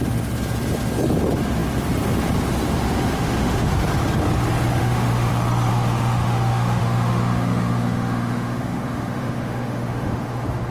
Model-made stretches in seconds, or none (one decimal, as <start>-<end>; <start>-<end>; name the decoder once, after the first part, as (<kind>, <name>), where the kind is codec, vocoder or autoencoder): 3.1-3.7 (autoencoder, DAC-VAE); 4.8-5.3; 5.7-10.7